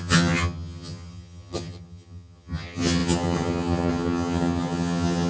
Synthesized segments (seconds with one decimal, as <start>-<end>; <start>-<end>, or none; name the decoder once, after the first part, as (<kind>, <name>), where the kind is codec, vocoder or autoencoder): 0.0-5.3 (vocoder, HiFi-GAN)